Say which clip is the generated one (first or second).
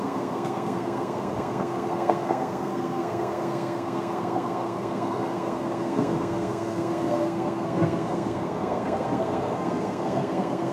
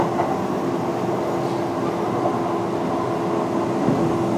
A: first